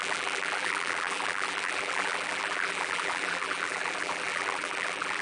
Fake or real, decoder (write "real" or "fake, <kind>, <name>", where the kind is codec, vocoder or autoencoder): fake, vocoder, BigVGAN v2